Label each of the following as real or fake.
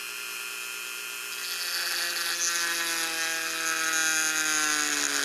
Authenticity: real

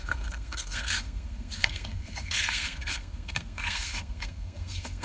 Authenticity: fake